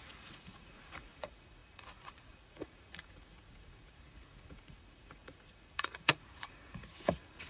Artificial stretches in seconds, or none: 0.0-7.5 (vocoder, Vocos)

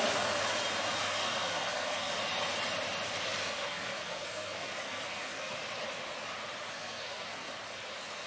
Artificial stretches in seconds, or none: 1.0-2.1 (codec, SNAC); 3.4-5.5; 6.7-7.5

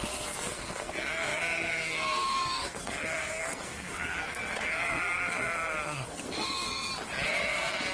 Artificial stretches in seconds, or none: 0.0-6.9 (codec, SNAC); 7.4-7.9

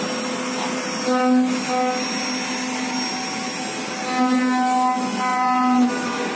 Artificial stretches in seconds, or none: 5.3-5.9 (vocoder, BigVGAN v2)

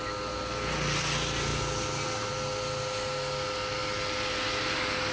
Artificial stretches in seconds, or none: none

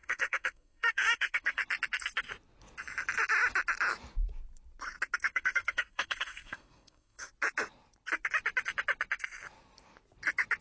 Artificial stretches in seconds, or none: 0.0-1.6 (codec, SNAC); 5.2-7.3

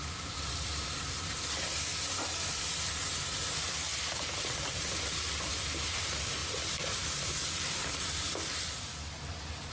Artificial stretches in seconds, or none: 0.0-1.9 (vocoder, BigVGAN v2); 4.9-8.9

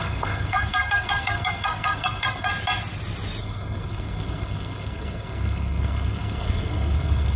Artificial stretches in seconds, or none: 0.0-2.5 (codec, SNAC); 3.4-7.4